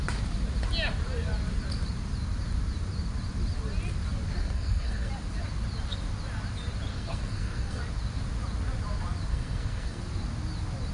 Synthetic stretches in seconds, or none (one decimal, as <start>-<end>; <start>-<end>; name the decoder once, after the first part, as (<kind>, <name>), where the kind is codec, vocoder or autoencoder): 4.4-5.1 (codec, SNAC); 6.9-7.8; 9.3-10.0